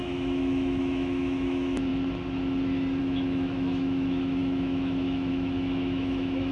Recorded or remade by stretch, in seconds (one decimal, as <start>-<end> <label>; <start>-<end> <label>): 0.0-1.9 remade; 1.9-3.0 recorded; 3.0-6.5 remade